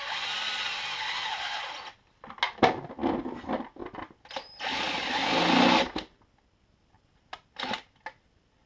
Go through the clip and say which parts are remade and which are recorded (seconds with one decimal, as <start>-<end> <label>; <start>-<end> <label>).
0.0-8.7 recorded